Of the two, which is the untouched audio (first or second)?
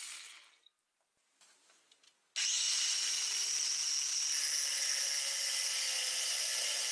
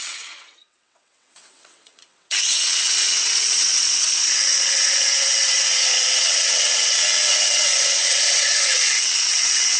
first